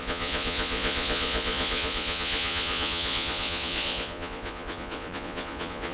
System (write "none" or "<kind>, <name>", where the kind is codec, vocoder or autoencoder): vocoder, Vocos